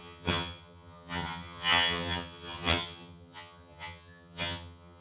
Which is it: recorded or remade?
remade